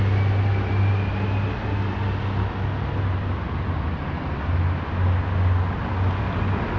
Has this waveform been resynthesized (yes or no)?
no